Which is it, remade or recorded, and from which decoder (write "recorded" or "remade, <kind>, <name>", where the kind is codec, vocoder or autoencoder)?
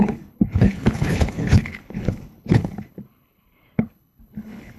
remade, codec, HILCodec